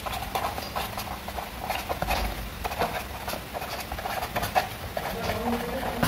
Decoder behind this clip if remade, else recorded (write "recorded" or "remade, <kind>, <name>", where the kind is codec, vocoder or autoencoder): recorded